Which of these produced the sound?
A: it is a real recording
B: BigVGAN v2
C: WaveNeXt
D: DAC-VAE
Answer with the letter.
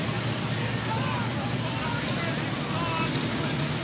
A